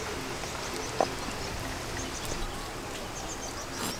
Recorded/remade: recorded